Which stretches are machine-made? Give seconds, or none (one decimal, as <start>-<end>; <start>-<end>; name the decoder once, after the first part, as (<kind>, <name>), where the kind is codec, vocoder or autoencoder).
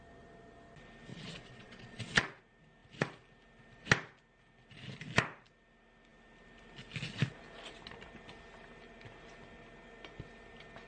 1.1-2.4 (vocoder, Vocos)